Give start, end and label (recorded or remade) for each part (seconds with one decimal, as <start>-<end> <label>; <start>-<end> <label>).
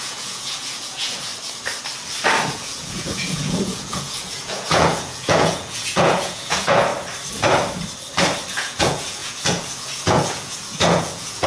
0.0-1.3 remade; 1.3-2.5 recorded; 2.5-6.9 remade; 6.9-8.5 recorded; 8.5-11.5 remade